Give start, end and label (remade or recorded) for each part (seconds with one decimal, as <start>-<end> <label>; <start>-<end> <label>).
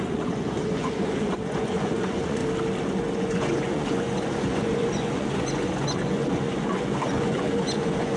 0.0-2.4 remade; 2.4-3.0 recorded; 3.0-8.2 remade